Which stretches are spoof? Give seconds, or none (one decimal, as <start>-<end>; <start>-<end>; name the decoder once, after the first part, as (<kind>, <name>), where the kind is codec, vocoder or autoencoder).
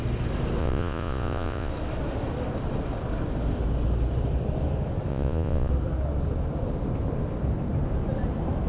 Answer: 0.6-1.7 (vocoder, Vocos); 5.1-5.7